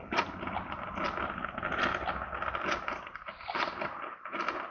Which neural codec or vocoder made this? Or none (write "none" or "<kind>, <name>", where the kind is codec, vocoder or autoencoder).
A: none